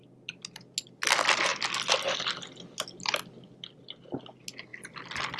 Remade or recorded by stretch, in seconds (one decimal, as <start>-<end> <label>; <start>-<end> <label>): 0.0-5.4 recorded